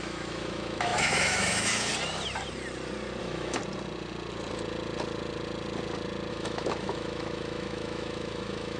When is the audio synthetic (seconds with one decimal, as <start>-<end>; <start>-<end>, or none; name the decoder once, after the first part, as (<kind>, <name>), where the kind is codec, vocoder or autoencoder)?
0.0-1.9 (autoencoder, DAC-VAE); 3.2-3.6; 6.3-8.8